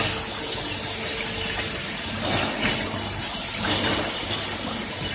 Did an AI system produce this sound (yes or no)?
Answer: no